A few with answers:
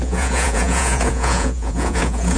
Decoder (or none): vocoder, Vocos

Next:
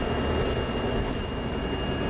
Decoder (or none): none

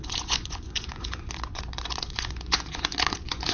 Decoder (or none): vocoder, Vocos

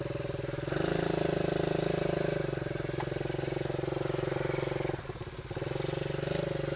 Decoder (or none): none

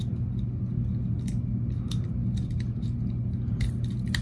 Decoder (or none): none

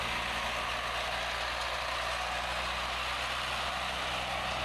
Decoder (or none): none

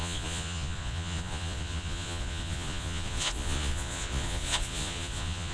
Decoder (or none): vocoder, Vocos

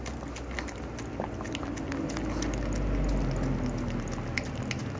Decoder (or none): none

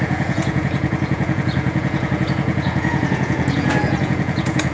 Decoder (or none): vocoder, Vocos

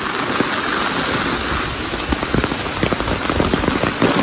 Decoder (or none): none